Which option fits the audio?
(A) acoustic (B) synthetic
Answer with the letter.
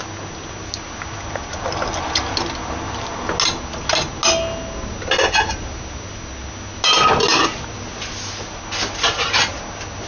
A